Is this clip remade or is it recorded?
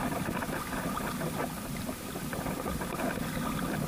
recorded